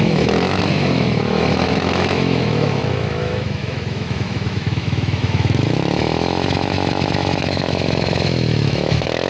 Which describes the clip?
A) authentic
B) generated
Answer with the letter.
B